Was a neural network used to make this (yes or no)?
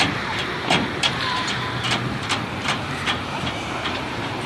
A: yes